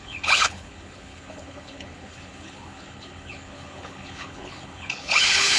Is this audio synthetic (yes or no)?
yes